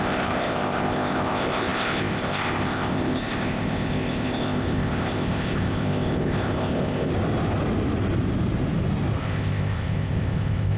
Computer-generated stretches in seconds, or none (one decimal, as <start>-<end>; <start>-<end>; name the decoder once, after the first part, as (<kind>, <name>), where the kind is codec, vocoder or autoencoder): 0.0-7.1 (codec, ZipCodec); 9.2-10.8